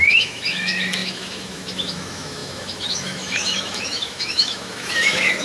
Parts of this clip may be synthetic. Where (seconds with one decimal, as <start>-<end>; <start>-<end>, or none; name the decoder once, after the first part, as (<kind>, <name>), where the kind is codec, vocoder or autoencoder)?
0.0-5.4 (autoencoder, DAC-VAE)